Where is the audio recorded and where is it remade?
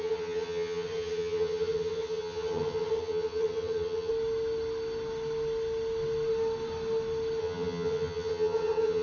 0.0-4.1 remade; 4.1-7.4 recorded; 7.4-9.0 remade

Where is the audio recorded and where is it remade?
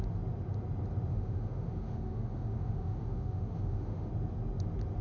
0.0-1.1 recorded; 1.1-4.1 remade; 4.1-5.0 recorded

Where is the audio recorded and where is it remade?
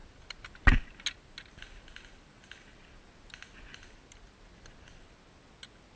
0.0-6.0 recorded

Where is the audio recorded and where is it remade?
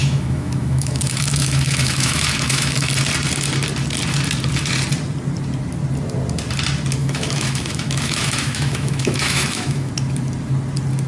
0.0-2.9 remade; 2.9-7.0 recorded; 7.0-9.9 remade; 9.9-11.1 recorded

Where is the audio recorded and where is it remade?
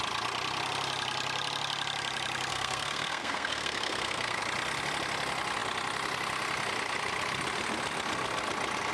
0.0-2.5 recorded; 2.5-4.4 remade; 4.4-8.9 recorded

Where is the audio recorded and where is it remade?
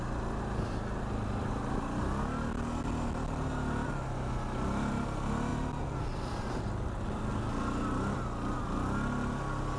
0.0-9.8 recorded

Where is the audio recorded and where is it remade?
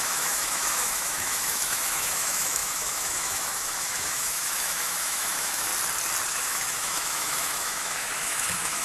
0.0-5.7 remade; 5.7-6.3 recorded; 6.3-8.8 remade